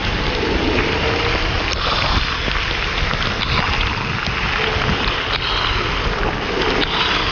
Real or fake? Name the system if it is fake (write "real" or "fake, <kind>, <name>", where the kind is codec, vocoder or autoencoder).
real